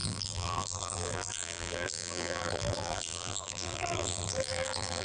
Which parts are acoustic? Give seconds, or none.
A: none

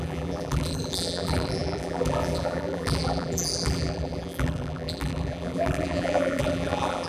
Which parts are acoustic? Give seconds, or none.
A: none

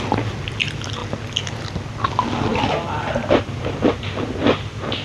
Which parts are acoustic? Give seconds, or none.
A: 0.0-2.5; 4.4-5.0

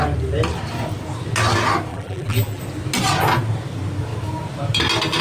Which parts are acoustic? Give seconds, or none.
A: 0.0-1.9; 2.6-5.2